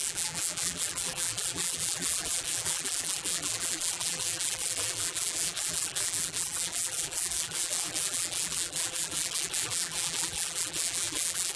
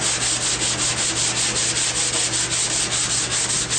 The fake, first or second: first